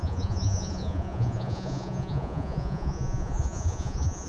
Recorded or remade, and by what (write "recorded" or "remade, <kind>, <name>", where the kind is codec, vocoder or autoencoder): remade, vocoder, Vocos